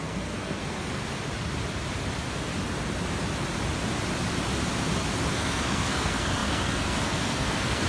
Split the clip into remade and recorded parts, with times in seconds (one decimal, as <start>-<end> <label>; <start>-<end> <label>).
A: 0.0-1.0 remade; 1.0-5.3 recorded; 5.3-7.9 remade